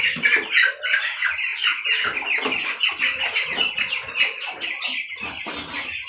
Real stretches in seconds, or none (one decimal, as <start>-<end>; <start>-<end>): 0.0-6.1